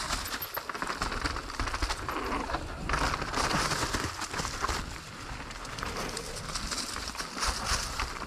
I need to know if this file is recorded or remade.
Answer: recorded